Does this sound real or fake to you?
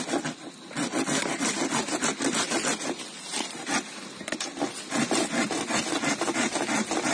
real